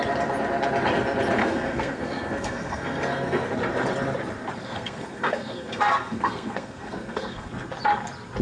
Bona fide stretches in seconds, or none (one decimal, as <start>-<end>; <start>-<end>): 0.0-1.4; 3.5-4.6; 7.5-8.4

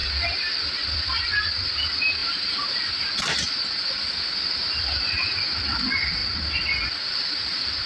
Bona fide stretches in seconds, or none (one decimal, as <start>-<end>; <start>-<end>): 0.0-2.2; 3.2-7.9

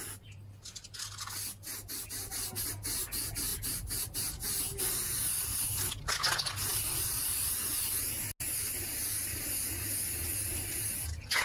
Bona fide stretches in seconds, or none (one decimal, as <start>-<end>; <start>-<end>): 0.0-6.7; 7.9-11.4

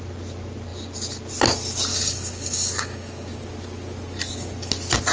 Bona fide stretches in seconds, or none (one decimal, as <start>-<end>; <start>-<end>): 0.0-1.9; 3.3-5.1

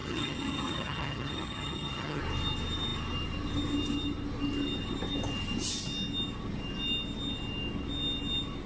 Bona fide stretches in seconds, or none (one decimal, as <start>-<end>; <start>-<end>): 2.2-8.7

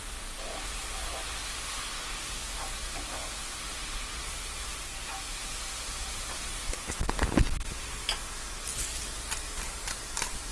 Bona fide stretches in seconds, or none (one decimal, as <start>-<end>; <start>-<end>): 0.0-10.5

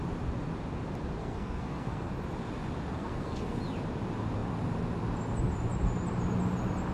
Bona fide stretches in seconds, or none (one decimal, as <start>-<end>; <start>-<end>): 0.0-1.2; 2.1-2.9; 3.6-6.9